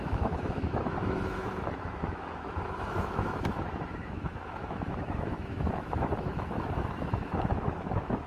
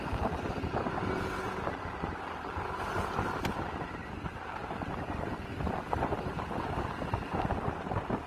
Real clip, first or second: second